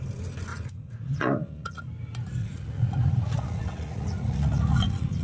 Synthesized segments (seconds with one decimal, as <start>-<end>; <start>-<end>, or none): 0.5-1.8; 2.4-5.2